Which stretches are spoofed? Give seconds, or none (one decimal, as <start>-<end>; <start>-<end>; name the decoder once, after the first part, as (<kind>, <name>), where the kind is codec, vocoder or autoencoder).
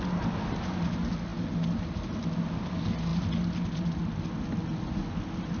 none